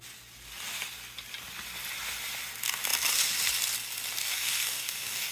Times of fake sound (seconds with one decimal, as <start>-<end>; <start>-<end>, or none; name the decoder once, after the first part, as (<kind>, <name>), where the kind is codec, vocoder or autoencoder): 4.2-5.3 (codec, DAC)